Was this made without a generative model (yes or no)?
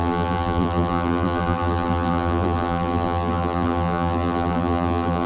no